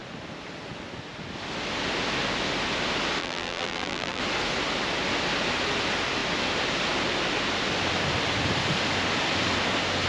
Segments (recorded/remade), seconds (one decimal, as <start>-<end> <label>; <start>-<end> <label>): 0.0-3.2 recorded; 3.2-4.2 remade; 4.2-10.1 recorded